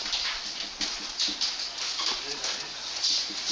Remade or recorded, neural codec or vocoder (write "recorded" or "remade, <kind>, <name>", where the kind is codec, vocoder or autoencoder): recorded